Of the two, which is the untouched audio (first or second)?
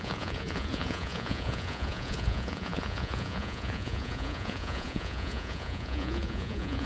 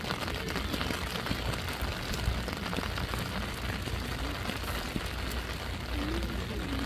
second